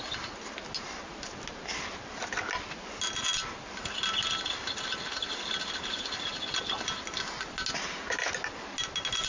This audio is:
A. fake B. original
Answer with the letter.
B